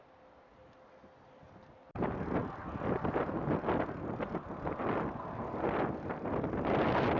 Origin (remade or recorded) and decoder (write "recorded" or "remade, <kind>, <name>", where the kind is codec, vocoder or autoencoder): recorded